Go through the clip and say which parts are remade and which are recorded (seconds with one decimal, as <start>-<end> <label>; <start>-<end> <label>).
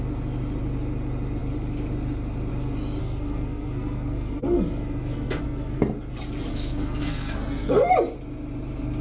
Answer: 0.0-3.0 recorded; 3.0-5.8 remade; 5.8-6.5 recorded; 6.5-7.9 remade; 7.9-9.0 recorded